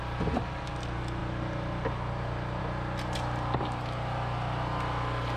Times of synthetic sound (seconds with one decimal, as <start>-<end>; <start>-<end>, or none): none